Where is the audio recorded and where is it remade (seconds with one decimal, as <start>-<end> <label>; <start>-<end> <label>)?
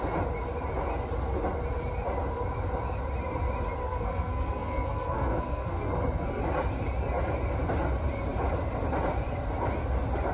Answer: 0.0-3.8 recorded; 3.8-6.4 remade; 6.4-10.3 recorded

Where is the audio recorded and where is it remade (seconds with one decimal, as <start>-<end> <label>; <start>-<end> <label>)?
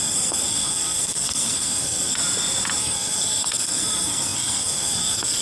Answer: 0.0-2.2 remade; 2.2-2.8 recorded; 2.8-5.4 remade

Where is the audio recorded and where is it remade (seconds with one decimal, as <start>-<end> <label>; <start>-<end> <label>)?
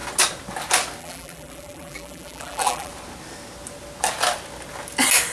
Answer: 0.0-1.0 recorded; 1.0-2.9 remade; 2.9-5.3 recorded